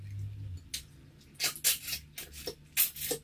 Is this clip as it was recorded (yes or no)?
yes